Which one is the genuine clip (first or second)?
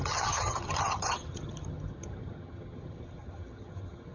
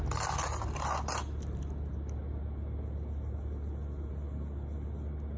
second